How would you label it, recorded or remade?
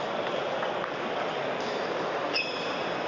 recorded